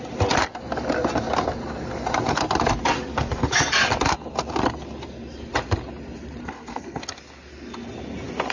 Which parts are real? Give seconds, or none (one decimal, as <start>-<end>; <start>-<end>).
0.0-6.4; 7.0-8.5